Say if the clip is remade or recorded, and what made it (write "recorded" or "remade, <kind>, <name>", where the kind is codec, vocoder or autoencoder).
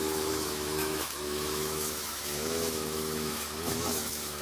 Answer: remade, autoencoder, DAC-VAE